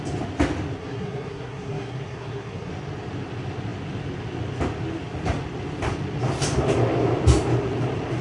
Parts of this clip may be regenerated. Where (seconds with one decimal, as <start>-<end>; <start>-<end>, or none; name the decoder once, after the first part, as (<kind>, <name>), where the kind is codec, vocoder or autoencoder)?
0.8-2.7 (codec, SNAC)